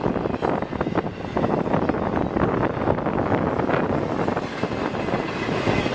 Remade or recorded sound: recorded